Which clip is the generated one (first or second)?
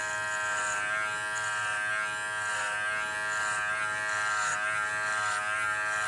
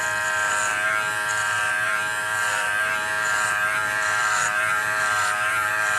second